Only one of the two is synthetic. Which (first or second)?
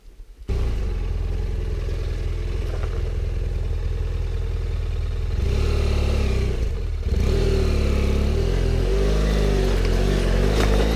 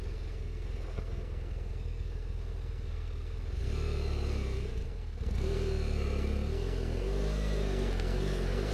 second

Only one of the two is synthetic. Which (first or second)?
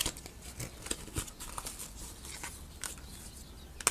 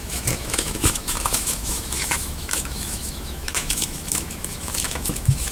second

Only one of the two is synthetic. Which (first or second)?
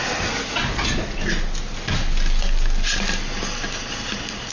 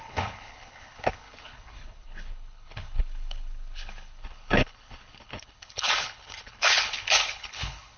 second